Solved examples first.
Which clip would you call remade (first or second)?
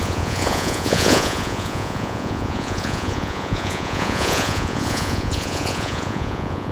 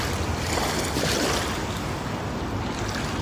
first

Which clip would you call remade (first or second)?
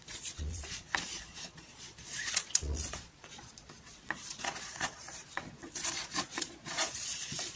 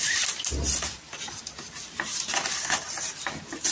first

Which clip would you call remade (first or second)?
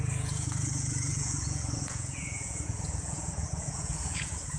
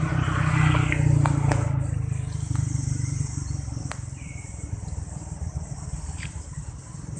first